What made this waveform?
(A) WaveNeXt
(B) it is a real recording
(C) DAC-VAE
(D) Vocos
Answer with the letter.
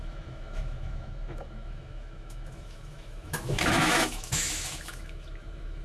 C